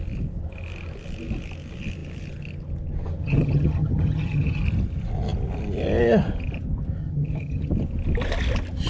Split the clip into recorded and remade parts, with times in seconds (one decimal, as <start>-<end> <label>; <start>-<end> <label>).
0.0-3.2 recorded; 3.2-4.6 remade; 4.6-7.0 recorded; 7.0-7.7 remade; 7.7-8.9 recorded